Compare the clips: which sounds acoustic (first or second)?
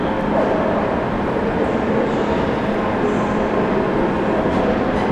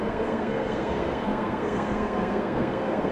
first